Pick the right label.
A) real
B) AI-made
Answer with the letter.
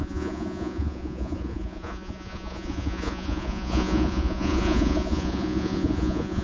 B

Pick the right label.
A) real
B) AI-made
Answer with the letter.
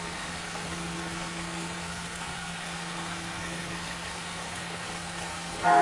B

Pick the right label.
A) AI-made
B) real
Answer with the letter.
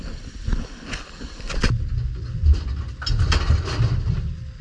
B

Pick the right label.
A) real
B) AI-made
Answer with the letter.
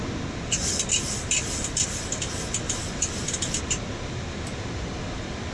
A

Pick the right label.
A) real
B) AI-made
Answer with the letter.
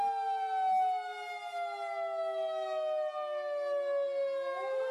A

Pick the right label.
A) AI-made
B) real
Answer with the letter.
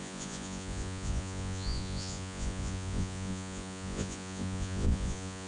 A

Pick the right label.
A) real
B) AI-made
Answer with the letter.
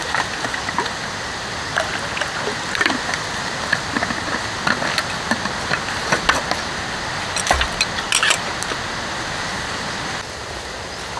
A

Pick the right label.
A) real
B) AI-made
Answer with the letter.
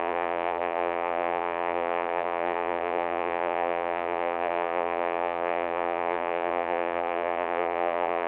B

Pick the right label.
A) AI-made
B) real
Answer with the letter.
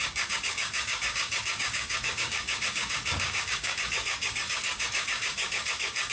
A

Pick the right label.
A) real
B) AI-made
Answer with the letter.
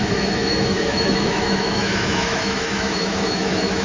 B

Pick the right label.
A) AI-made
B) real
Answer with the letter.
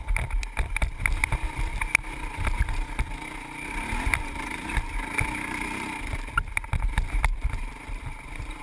A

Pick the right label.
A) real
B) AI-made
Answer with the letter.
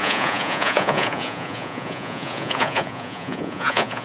B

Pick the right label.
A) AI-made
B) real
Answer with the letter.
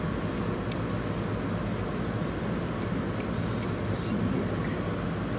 B